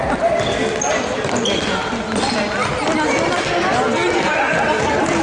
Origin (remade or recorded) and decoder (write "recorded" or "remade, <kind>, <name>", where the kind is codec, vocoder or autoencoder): recorded